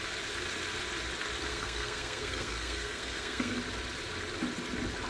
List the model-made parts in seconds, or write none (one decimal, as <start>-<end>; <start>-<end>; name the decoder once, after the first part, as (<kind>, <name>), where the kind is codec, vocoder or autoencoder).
1.5-3.6 (codec, SNAC)